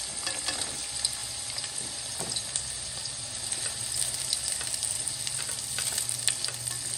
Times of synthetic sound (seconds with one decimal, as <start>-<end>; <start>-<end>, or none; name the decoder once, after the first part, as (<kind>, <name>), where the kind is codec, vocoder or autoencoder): none